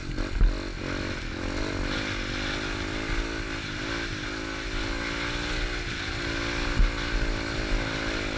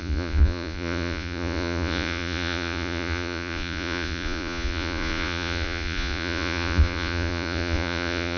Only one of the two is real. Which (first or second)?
first